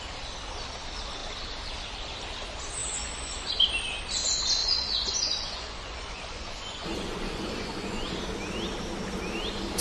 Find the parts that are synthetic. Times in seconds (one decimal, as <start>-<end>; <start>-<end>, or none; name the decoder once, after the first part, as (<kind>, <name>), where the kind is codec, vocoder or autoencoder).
2.8-3.5 (vocoder, Vocos); 4.6-8.2